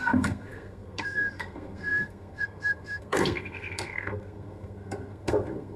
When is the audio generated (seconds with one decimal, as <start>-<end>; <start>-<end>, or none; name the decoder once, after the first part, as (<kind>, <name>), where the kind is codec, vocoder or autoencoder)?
0.0-5.8 (codec, SNAC)